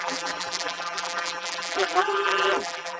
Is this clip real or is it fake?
fake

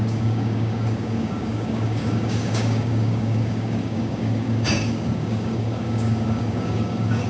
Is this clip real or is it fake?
fake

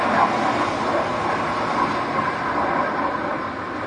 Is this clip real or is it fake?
real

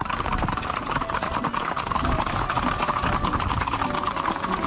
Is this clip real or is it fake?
real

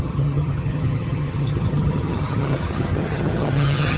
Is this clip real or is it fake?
fake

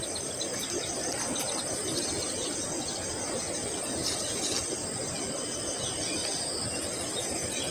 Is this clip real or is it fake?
real